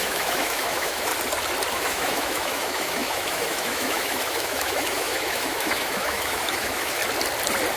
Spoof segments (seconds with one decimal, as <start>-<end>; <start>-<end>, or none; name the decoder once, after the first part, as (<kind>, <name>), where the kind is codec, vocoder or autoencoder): 0.0-1.1 (autoencoder, DAC-VAE); 1.7-7.0